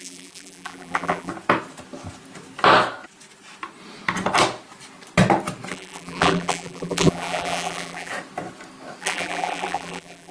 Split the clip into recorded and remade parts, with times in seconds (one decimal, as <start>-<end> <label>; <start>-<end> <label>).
0.0-1.3 remade; 1.3-5.7 recorded; 5.7-8.1 remade; 8.1-9.0 recorded; 9.0-10.3 remade